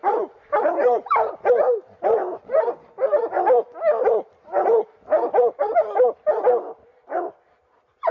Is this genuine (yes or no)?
yes